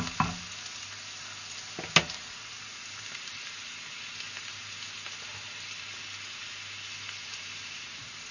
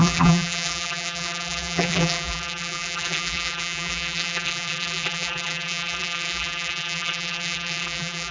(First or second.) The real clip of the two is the first